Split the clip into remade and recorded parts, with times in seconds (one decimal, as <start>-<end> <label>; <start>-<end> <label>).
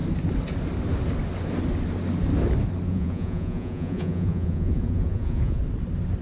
0.0-2.9 recorded; 2.9-5.6 remade; 5.6-6.2 recorded